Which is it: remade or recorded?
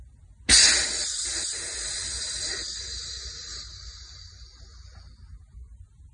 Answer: recorded